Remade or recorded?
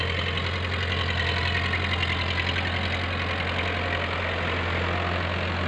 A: recorded